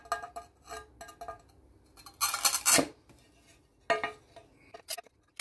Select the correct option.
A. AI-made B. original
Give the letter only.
B